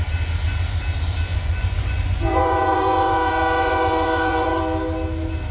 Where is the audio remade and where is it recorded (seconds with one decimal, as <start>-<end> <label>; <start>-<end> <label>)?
0.0-1.3 recorded; 1.3-4.6 remade; 4.6-5.5 recorded

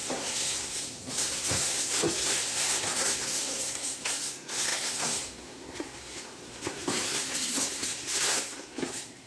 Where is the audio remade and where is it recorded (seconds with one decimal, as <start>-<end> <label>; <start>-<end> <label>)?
0.0-9.3 remade

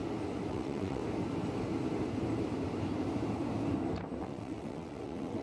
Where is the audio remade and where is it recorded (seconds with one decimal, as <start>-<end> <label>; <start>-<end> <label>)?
0.0-0.5 recorded; 0.5-1.0 remade; 1.0-4.2 recorded; 4.2-5.4 remade